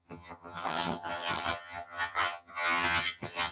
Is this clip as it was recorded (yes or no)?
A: no